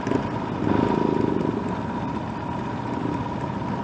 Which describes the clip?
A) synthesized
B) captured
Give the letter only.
B